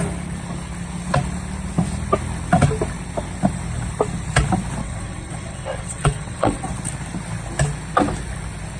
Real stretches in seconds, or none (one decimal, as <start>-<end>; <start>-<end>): 0.0-4.8; 6.7-8.8

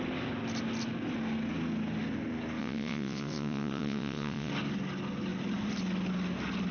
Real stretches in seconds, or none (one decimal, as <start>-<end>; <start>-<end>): 0.0-2.6; 4.5-6.7

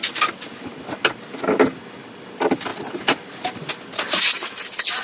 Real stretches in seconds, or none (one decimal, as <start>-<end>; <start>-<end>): 0.0-5.0

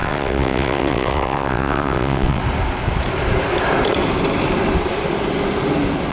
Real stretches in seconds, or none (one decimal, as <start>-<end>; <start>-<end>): 2.4-6.1